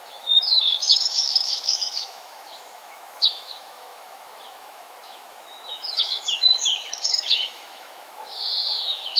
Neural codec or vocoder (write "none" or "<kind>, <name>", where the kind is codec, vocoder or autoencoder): autoencoder, DAC-VAE